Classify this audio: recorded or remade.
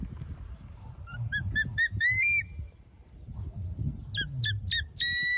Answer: recorded